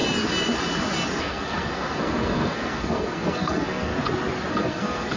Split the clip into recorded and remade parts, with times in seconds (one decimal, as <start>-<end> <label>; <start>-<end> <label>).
0.0-1.2 recorded; 1.2-3.9 remade; 3.9-4.5 recorded; 4.5-5.2 remade